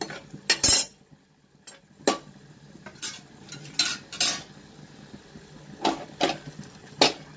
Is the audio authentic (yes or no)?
yes